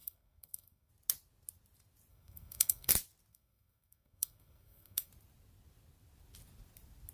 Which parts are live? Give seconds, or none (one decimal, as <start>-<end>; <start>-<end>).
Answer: 0.9-2.1; 2.9-3.3; 5.1-7.1